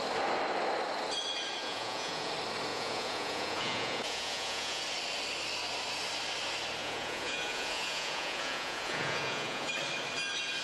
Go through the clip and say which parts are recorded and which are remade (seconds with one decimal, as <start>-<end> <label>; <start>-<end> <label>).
0.0-1.6 recorded; 1.6-2.3 remade; 2.3-2.7 recorded; 2.7-4.8 remade; 4.8-6.8 recorded; 6.8-9.7 remade; 9.7-10.6 recorded